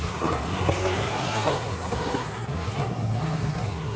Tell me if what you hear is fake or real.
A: fake